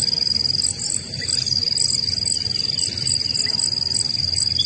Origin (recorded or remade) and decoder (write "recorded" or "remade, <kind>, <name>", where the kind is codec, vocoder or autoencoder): recorded